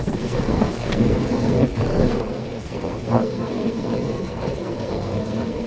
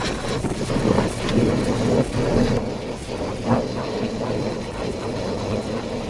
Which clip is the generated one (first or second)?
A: first